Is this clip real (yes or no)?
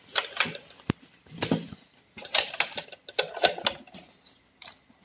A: yes